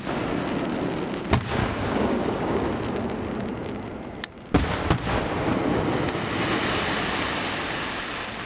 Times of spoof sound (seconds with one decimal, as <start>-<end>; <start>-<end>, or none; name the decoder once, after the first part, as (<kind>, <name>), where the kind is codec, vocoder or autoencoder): 1.6-2.7 (codec, DAC)